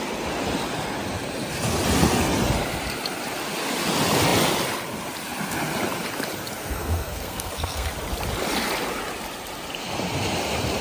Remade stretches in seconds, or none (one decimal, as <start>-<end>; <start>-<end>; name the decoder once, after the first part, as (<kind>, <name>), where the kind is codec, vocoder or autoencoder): 6.6-7.9 (codec, SNAC)